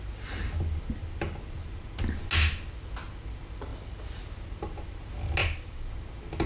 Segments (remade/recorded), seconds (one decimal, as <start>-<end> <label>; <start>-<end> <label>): 0.0-3.7 recorded; 3.7-4.2 remade; 4.2-5.4 recorded; 5.4-5.9 remade; 5.9-6.5 recorded